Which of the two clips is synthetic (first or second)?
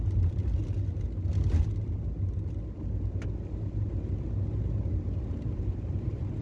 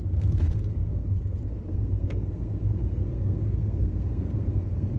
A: second